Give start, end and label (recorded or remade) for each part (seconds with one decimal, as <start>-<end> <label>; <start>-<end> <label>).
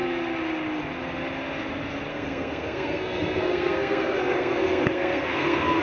0.0-2.1 recorded; 2.1-5.8 remade